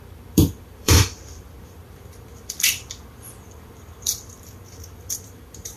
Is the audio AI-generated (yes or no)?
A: yes